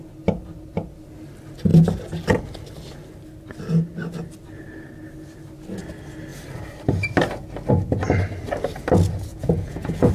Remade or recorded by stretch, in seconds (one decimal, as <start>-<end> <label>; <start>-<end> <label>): 0.0-9.3 recorded; 9.3-10.1 remade

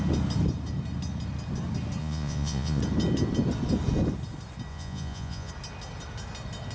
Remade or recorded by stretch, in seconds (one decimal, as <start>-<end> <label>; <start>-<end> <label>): 0.0-2.0 recorded; 2.0-2.8 remade; 2.8-4.7 recorded; 4.7-5.5 remade; 5.5-6.7 recorded

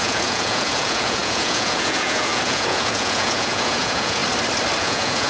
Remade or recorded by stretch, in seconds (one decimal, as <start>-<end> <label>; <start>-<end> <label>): 0.0-4.2 remade; 4.2-4.8 recorded; 4.8-5.3 remade

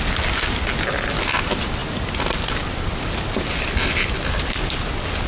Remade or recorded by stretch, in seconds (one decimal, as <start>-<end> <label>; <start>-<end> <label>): 0.0-5.3 recorded